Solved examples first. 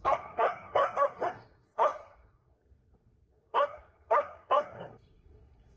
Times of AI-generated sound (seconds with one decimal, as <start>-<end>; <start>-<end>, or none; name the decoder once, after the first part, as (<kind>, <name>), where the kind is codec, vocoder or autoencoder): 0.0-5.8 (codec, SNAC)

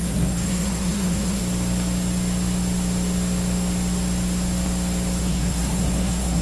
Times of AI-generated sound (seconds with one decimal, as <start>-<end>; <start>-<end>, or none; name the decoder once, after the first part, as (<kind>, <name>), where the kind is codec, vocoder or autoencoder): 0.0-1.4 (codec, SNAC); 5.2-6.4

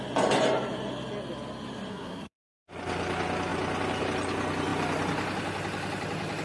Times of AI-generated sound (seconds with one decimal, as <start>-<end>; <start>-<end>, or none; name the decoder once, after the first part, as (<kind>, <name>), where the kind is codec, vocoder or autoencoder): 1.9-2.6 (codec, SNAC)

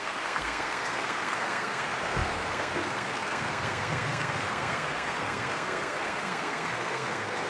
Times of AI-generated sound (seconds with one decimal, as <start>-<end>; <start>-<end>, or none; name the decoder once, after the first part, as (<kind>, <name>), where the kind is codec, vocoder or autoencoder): 0.0-7.5 (codec, SNAC)